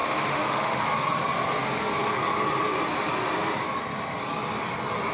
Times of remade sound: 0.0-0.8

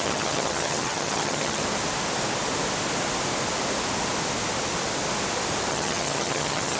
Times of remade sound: 0.0-1.6; 5.7-6.8

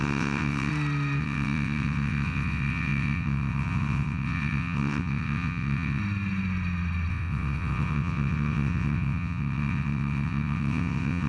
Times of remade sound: 0.0-0.7; 1.2-6.0; 7.1-11.3

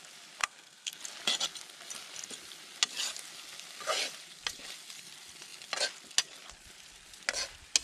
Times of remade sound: 0.4-1.0

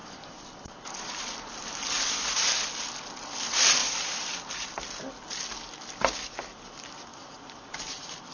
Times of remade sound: 0.0-2.3; 3.8-4.8; 7.1-8.3

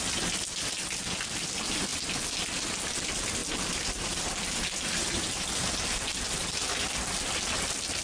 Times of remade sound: none

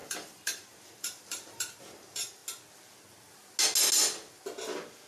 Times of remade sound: 0.0-2.4